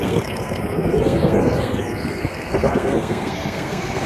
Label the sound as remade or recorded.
remade